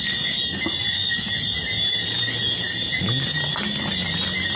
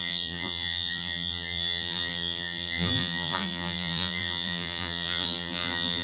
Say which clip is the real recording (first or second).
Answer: first